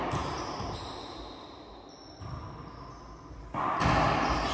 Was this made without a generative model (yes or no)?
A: yes